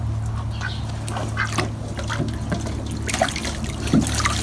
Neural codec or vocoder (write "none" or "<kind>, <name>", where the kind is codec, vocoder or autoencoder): none